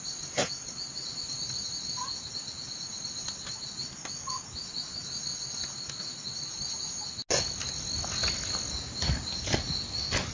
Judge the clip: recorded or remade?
recorded